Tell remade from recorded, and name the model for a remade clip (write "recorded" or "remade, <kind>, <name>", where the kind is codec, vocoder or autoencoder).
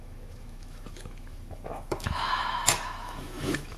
remade, autoencoder, DAC-VAE